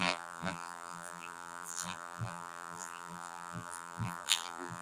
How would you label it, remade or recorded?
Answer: remade